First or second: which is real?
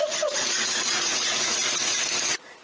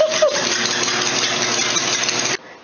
second